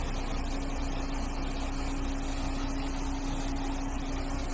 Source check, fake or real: real